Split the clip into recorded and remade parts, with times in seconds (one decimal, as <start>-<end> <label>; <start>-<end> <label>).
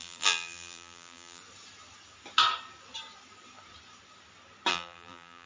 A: 0.0-1.4 remade; 1.4-4.7 recorded; 4.7-5.5 remade